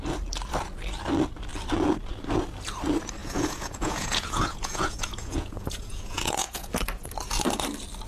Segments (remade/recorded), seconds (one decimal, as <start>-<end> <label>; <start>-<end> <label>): 0.0-3.2 recorded; 3.2-6.7 remade; 6.7-8.1 recorded